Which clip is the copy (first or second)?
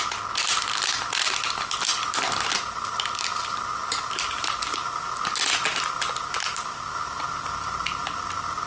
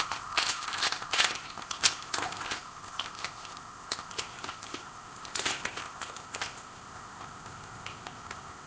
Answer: second